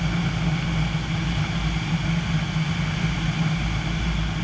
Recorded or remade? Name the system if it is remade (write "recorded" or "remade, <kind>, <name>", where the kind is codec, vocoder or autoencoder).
recorded